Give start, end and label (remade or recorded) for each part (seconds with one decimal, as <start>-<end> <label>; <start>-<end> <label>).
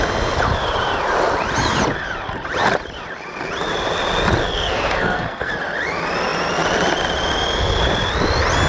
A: 0.0-4.4 recorded; 4.4-5.5 remade; 5.5-8.7 recorded